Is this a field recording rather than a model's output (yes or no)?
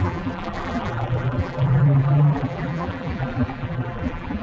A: no